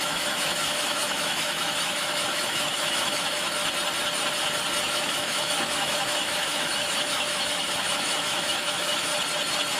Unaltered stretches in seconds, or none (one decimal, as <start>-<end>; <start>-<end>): 3.6-4.8; 9.1-9.8

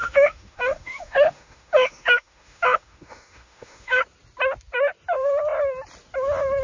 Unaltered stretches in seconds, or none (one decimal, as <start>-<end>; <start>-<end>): 4.0-6.6

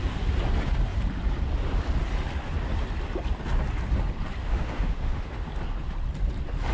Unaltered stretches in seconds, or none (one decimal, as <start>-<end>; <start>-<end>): 0.0-4.4; 5.5-6.7

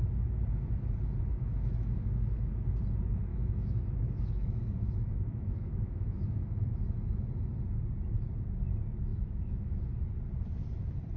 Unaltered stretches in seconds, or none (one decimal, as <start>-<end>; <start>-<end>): 0.0-1.3; 2.5-3.3; 6.8-9.1; 9.8-11.2

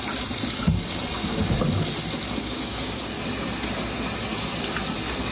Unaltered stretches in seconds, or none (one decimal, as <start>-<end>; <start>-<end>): 0.0-2.4; 3.0-5.3

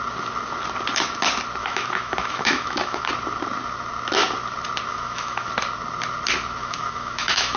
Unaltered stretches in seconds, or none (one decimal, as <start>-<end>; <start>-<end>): 0.0-1.6; 3.1-4.9; 5.5-6.6

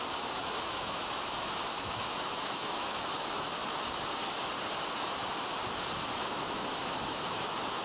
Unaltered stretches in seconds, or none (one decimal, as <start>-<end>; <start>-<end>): 3.6-6.1

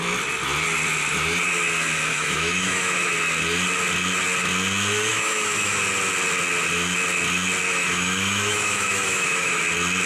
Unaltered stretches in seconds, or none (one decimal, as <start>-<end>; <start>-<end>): 0.0-2.1; 3.1-5.1; 5.8-7.7; 9.6-10.1